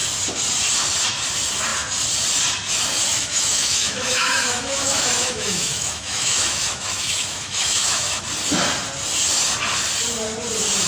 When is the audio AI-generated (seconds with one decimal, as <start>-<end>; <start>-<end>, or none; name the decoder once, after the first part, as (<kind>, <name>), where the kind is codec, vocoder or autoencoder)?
3.1-8.2 (autoencoder, DAC-VAE)

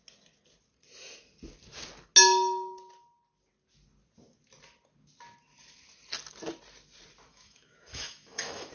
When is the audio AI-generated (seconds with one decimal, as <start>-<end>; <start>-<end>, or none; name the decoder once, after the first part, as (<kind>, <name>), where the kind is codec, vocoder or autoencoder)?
7.3-8.7 (autoencoder, DAC-VAE)

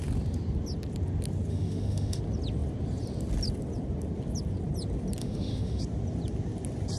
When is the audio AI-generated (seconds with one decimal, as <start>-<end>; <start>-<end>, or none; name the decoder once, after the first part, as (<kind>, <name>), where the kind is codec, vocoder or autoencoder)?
1.5-2.2 (autoencoder, DAC-VAE); 5.2-5.8

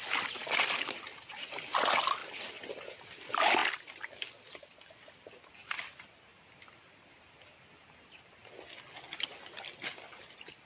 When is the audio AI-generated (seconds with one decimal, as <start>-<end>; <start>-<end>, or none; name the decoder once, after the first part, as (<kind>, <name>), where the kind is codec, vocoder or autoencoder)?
none